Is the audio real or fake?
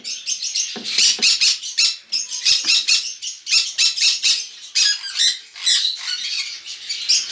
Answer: real